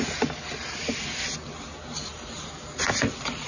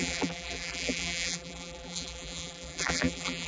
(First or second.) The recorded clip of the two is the first